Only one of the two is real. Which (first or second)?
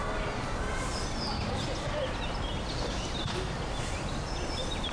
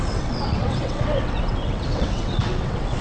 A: first